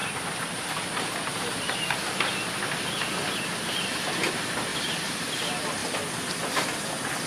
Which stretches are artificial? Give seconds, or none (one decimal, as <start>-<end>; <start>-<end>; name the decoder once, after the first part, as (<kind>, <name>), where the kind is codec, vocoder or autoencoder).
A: 0.0-1.5 (vocoder, BigVGAN v2); 4.7-5.3